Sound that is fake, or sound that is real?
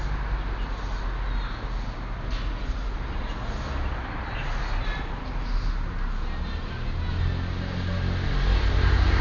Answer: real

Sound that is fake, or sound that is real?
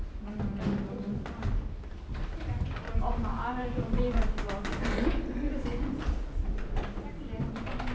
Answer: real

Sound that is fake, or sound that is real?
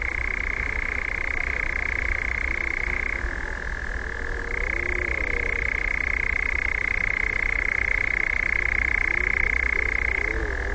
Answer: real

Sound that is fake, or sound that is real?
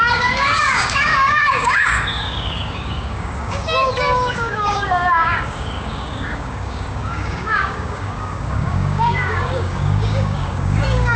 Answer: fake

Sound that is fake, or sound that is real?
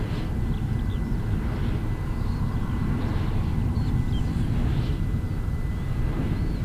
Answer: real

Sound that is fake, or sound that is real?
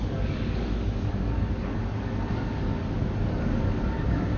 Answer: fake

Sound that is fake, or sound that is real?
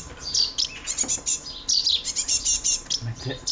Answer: real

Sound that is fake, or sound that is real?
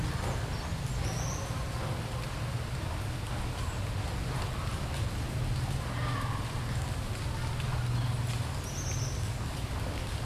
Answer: real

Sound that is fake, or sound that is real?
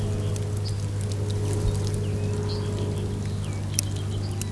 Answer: real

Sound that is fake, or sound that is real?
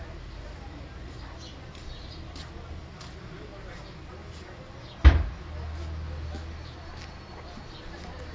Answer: real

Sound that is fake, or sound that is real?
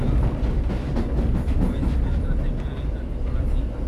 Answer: real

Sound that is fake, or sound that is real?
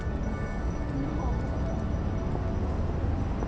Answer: real